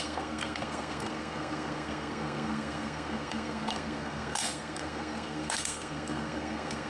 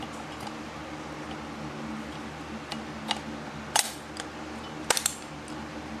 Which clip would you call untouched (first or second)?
second